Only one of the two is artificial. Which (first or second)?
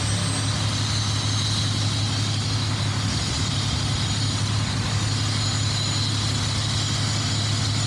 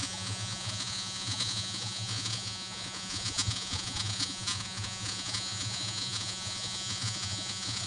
second